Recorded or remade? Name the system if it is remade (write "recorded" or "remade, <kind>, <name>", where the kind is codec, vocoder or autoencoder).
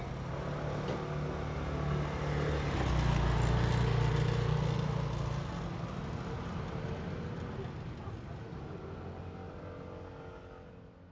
recorded